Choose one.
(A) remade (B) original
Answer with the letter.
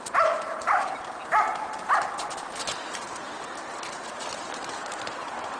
A